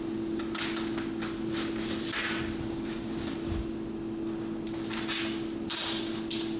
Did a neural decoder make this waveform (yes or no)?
no